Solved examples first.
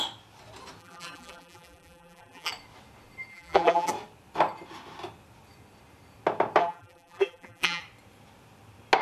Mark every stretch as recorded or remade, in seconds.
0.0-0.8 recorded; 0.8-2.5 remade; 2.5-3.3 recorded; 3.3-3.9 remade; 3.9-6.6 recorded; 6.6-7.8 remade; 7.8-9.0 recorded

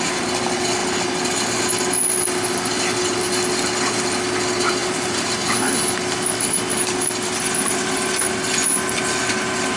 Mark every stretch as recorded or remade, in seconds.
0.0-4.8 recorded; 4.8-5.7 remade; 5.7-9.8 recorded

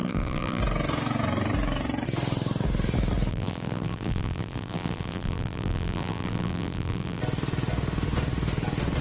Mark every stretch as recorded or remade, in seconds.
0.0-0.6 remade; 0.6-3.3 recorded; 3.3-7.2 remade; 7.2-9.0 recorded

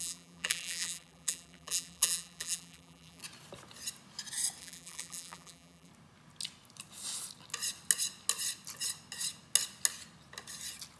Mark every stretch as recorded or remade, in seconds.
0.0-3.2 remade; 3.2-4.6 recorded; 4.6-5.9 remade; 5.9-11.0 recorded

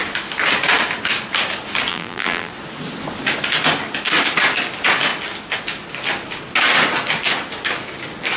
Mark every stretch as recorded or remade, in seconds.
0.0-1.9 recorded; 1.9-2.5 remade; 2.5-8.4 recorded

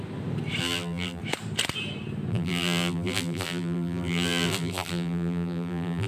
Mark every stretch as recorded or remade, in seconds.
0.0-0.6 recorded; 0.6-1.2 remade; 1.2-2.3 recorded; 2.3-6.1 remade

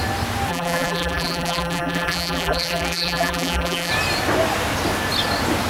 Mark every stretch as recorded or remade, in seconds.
0.0-0.5 recorded; 0.5-3.9 remade; 3.9-5.7 recorded